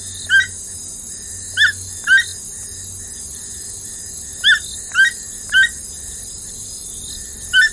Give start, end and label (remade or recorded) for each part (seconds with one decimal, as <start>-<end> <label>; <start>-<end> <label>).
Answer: 0.0-7.7 recorded